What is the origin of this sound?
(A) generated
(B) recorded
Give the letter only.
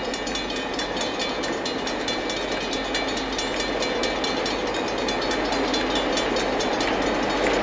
B